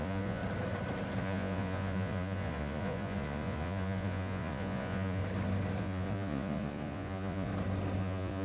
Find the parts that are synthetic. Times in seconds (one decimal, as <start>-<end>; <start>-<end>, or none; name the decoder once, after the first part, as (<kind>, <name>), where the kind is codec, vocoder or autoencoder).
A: 0.0-0.4 (vocoder, Vocos); 1.2-5.2; 5.8-7.5; 8.0-8.4